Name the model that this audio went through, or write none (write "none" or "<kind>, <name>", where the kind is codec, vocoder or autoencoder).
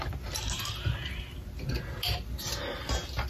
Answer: none